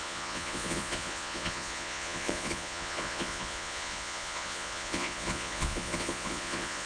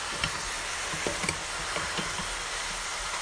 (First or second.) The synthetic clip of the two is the first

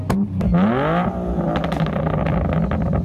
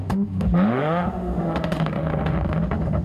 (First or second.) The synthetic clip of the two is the second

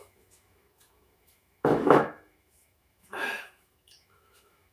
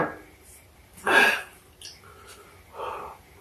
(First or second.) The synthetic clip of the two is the first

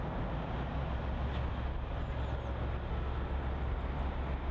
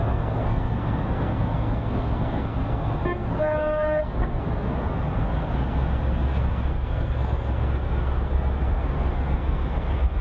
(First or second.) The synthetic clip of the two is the second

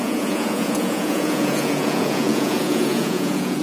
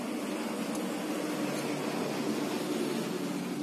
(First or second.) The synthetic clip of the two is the first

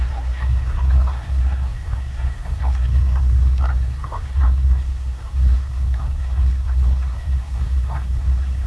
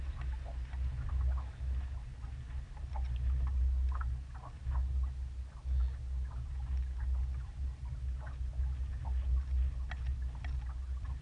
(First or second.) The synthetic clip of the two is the first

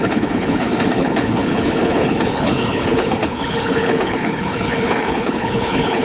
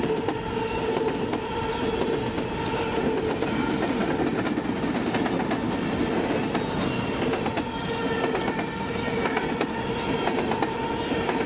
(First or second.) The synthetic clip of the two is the first